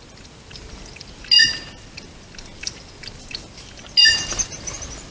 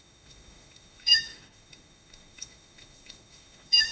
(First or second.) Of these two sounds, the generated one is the second